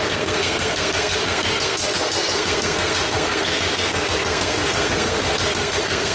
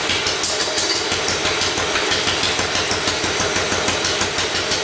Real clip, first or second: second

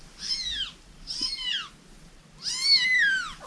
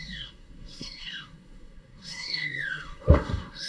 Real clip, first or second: first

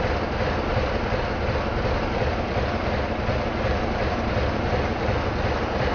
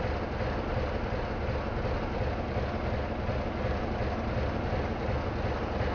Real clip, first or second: second